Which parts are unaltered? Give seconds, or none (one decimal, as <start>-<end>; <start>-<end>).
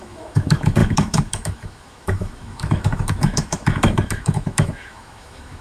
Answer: none